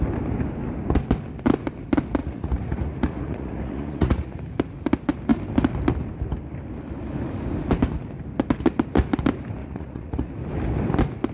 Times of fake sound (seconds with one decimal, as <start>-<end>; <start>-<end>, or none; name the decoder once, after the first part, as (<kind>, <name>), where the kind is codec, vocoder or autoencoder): 2.2-4.4 (vocoder, Vocos); 9.6-10.3

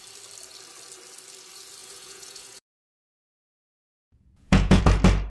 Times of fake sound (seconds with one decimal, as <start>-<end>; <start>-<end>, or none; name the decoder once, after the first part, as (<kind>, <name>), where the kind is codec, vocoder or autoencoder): 1.8-4.8 (vocoder, Vocos)

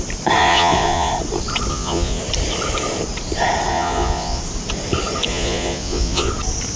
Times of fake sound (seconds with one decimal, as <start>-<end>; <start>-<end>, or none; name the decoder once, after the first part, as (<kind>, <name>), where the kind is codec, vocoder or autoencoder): 0.4-1.1 (vocoder, Vocos); 1.7-2.2; 3.7-4.4; 5.3-6.3